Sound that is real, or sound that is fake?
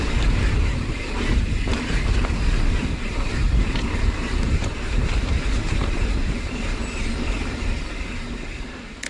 fake